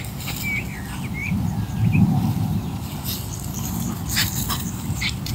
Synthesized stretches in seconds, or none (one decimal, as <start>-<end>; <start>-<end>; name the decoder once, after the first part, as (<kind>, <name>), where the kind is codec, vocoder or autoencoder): 1.2-2.6 (vocoder, BigVGAN v2); 4.2-5.3